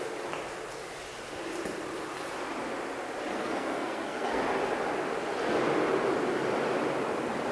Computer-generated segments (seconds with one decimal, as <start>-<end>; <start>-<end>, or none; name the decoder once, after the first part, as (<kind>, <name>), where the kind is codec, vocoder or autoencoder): 3.3-4.4 (codec, SNAC)